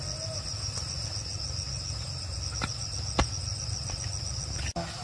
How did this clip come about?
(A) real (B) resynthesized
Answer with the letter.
A